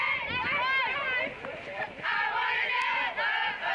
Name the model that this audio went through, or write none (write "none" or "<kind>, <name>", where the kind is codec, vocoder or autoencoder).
none